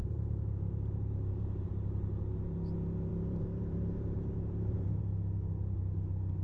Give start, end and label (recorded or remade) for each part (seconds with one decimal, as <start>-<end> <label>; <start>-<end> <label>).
0.0-1.7 remade; 1.7-3.1 recorded; 3.1-5.0 remade; 5.0-6.4 recorded